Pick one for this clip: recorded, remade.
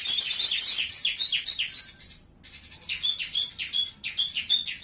recorded